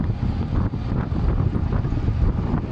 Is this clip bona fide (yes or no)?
yes